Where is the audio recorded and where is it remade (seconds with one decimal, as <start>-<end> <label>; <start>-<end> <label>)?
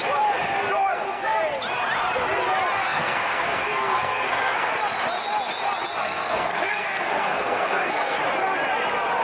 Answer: 0.0-0.9 recorded; 0.9-1.4 remade; 1.4-2.8 recorded; 2.8-4.7 remade; 4.7-6.0 recorded; 6.0-8.2 remade; 8.2-9.2 recorded